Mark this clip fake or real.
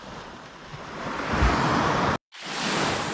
real